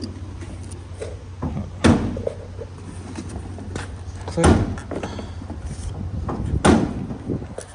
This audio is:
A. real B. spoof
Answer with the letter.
A